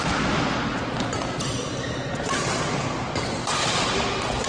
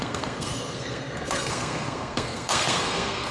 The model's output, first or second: second